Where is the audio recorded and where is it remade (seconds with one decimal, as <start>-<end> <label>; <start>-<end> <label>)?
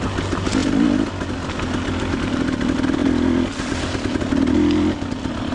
0.0-5.5 recorded